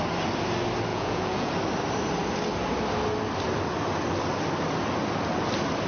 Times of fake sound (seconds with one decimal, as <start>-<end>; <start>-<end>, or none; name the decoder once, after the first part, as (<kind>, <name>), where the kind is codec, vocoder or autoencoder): 0.9-1.5 (vocoder, Vocos)

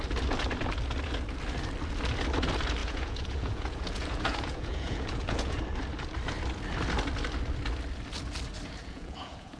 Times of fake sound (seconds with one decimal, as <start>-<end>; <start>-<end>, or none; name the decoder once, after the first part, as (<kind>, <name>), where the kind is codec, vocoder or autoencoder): 2.8-5.6 (vocoder, Vocos); 8.8-9.6

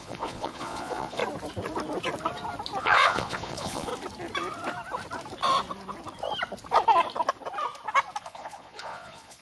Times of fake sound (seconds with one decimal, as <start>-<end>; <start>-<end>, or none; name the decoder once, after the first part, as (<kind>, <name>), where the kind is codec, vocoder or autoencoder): 0.0-1.2 (vocoder, Vocos); 2.8-3.9; 8.2-9.4

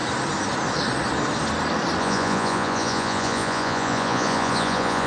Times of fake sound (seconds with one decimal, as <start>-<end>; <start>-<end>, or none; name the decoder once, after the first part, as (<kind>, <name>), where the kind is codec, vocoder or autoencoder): 2.0-5.1 (vocoder, Vocos)

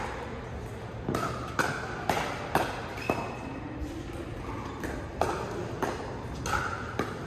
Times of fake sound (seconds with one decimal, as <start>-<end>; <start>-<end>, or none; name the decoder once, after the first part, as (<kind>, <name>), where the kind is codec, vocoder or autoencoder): none